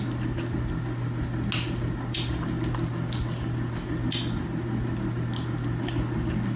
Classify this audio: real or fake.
real